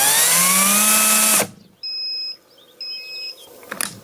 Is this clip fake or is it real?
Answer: real